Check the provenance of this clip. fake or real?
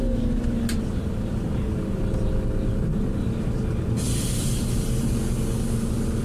real